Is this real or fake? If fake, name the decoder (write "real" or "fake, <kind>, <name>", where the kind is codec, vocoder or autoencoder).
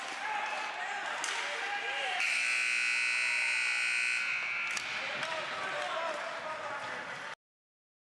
real